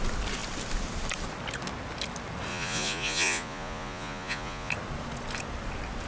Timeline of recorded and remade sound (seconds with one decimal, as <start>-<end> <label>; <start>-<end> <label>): 0.0-2.5 recorded; 2.5-4.7 remade; 4.7-6.1 recorded